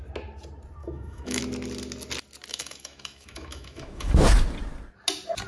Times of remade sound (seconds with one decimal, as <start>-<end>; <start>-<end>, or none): 0.8-1.4; 2.5-4.1